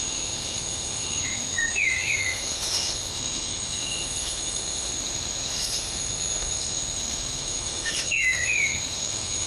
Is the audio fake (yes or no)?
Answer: yes